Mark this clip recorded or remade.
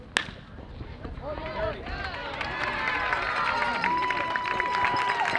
recorded